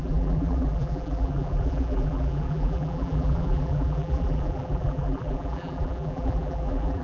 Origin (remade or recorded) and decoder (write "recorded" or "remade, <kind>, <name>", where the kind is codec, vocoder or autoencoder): remade, vocoder, BigVGAN v2